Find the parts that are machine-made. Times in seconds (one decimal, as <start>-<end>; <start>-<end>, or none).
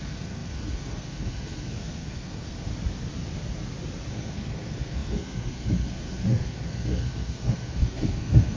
0.0-2.7; 4.1-8.6